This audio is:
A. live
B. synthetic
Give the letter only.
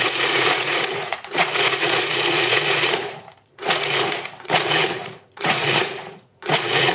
B